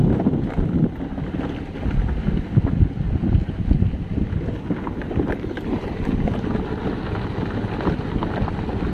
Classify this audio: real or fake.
real